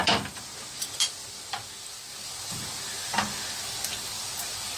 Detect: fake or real real